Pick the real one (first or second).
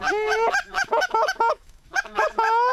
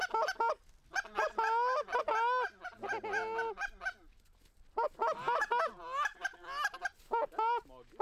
second